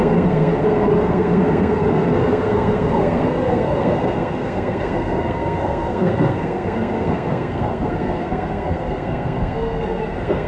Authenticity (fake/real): fake